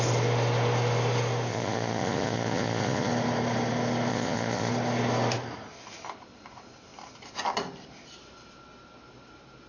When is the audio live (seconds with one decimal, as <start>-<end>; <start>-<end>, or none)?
0.0-1.5; 3.1-4.1; 4.7-9.7